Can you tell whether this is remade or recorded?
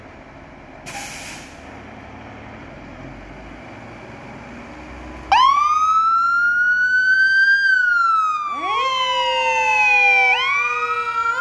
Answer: recorded